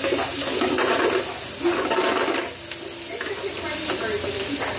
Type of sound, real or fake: real